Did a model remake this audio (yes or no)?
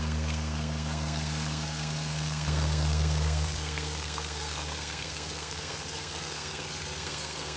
yes